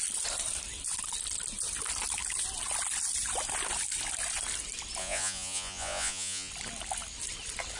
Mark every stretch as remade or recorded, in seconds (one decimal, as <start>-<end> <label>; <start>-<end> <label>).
0.0-5.0 recorded; 5.0-6.5 remade; 6.5-7.8 recorded

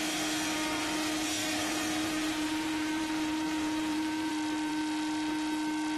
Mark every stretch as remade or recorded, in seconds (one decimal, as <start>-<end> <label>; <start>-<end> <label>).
0.0-1.4 recorded; 1.4-4.3 remade; 4.3-6.0 recorded

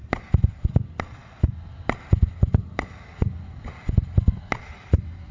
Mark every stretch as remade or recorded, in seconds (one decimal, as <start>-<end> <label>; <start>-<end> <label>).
0.0-5.3 recorded

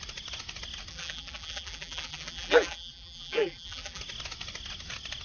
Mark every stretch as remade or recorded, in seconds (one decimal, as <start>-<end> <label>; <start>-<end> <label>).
0.0-0.9 recorded; 0.9-4.0 remade; 4.0-5.2 recorded

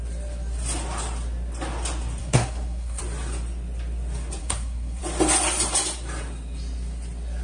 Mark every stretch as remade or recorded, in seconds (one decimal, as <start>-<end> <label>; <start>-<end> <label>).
0.0-2.2 recorded; 2.2-3.0 remade; 3.0-4.4 recorded; 4.4-5.0 remade; 5.0-7.4 recorded

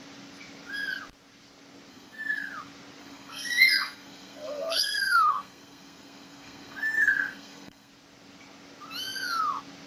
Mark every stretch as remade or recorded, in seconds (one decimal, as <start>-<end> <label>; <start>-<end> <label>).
0.0-1.9 recorded; 1.9-2.5 remade; 2.5-3.0 recorded; 3.0-7.9 remade; 7.9-9.9 recorded